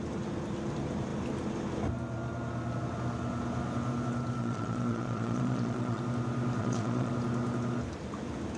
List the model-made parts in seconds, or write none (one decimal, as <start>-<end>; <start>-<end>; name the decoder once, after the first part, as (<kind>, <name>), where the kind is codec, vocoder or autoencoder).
4.4-6.0 (vocoder, Vocos); 6.6-7.1